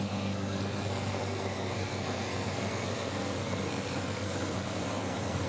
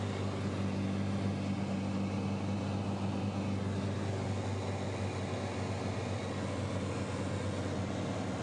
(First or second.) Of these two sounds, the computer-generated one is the first